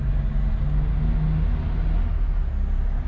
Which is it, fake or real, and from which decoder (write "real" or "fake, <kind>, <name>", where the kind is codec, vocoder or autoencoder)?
real